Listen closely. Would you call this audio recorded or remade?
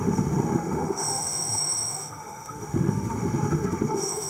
remade